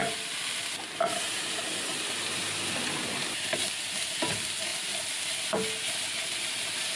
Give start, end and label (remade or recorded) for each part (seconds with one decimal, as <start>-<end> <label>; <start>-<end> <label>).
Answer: 0.0-7.0 recorded